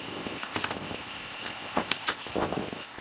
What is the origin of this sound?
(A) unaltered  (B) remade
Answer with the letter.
B